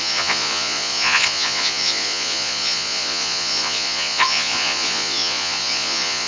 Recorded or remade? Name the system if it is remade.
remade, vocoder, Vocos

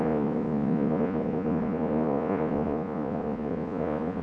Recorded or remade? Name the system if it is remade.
remade, vocoder, Vocos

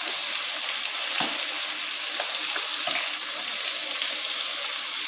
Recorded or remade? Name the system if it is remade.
recorded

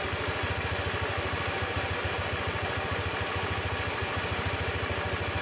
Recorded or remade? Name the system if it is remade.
recorded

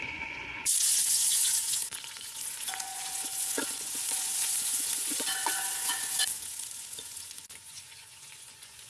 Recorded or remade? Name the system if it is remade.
remade, vocoder, Vocos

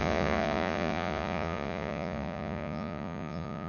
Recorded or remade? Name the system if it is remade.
remade, vocoder, Vocos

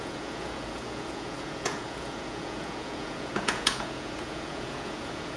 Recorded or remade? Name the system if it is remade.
remade, vocoder, Vocos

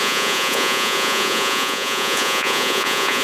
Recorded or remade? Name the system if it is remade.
remade, vocoder, Vocos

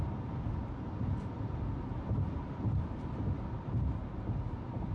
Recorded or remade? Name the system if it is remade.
recorded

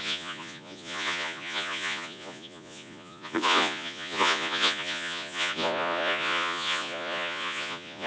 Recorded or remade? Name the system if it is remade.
remade, vocoder, Vocos